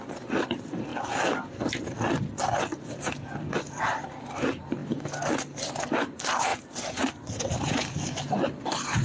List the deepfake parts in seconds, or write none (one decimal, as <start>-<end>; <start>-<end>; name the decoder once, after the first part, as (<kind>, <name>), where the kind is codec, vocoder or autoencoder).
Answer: 0.0-0.9 (vocoder, BigVGAN v2); 2.9-4.8; 5.9-6.5; 7.4-9.0